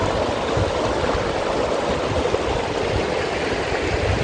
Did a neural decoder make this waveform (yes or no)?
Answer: no